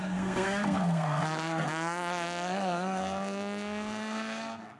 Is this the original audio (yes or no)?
no